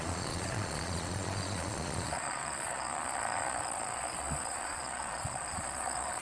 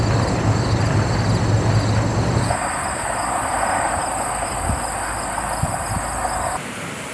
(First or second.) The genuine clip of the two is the second